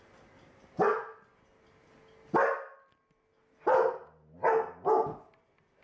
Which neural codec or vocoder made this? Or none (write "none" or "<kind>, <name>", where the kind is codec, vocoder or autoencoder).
none